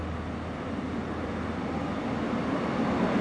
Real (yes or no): yes